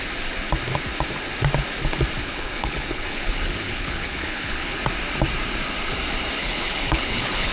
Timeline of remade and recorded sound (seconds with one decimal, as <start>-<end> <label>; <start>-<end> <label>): 0.0-2.2 recorded; 2.2-4.8 remade; 4.8-6.4 recorded; 6.4-7.5 remade